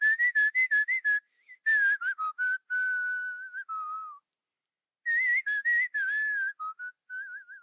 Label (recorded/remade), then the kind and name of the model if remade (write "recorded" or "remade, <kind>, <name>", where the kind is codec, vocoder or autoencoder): recorded